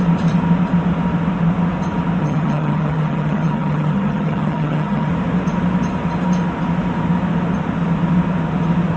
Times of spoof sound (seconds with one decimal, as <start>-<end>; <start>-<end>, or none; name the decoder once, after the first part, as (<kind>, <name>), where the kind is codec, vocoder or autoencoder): 2.2-5.1 (vocoder, HiFi-GAN)